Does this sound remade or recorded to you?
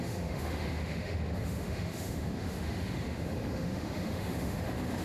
remade